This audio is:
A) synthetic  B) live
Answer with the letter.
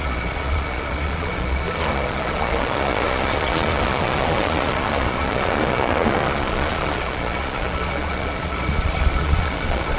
A